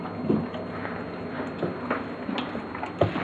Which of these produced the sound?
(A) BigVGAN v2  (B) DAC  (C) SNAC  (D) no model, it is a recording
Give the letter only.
D